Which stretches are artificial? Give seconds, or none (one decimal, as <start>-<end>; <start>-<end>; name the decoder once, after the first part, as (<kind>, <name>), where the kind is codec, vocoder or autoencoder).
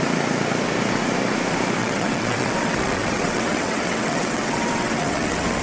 1.8-5.6 (vocoder, WaveNeXt)